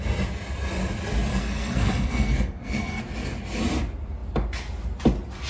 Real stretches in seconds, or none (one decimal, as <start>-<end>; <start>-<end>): 0.0-1.3; 3.0-5.5